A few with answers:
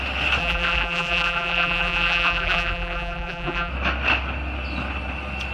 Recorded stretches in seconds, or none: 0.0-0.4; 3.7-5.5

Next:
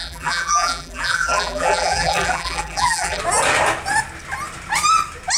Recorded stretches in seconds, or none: 3.2-5.4

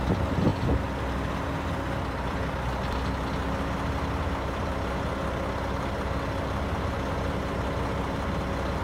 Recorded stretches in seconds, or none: 0.0-8.8

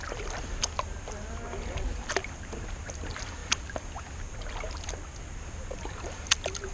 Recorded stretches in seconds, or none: 0.0-6.7

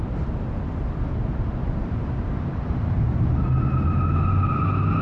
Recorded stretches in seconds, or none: 0.0-1.6; 3.3-5.0

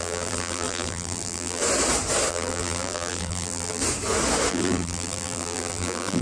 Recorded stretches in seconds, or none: 1.6-2.3; 3.8-4.5